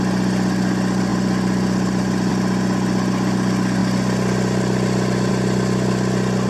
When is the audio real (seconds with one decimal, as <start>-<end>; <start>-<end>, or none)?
0.0-1.1; 2.3-6.5